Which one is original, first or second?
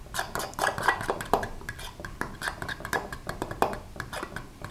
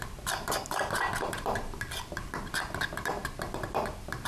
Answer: first